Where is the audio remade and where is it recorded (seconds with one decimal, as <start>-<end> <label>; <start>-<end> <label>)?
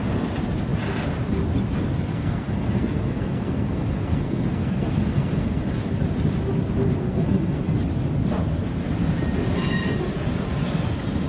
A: 0.0-2.1 recorded; 2.1-5.6 remade; 5.6-7.0 recorded; 7.0-7.6 remade; 7.6-11.3 recorded